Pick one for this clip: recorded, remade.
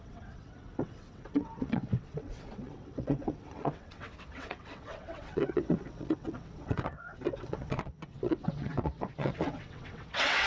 remade